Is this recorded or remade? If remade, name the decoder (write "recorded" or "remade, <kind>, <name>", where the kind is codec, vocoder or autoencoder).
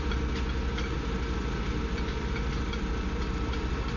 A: recorded